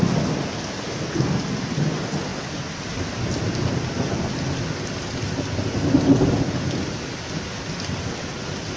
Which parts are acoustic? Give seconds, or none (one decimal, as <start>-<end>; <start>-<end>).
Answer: 0.0-8.8